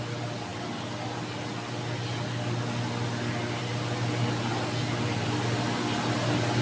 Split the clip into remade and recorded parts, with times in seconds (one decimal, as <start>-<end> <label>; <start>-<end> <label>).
0.0-6.6 recorded